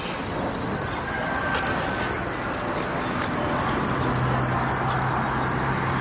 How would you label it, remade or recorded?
recorded